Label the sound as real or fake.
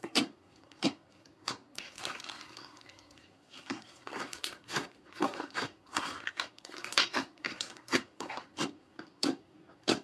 fake